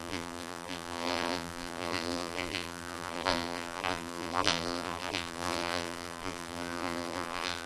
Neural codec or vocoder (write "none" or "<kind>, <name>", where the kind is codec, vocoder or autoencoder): vocoder, BigVGAN v2